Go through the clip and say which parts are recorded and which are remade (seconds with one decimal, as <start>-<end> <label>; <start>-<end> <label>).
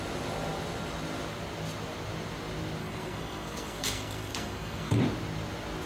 0.0-2.8 recorded; 2.8-5.0 remade; 5.0-5.9 recorded